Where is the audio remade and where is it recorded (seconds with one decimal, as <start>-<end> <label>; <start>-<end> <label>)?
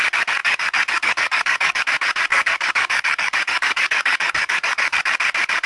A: 0.0-0.4 recorded; 0.4-1.8 remade; 1.8-2.3 recorded; 2.3-5.0 remade; 5.0-5.7 recorded